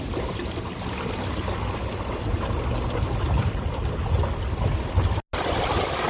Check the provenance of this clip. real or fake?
real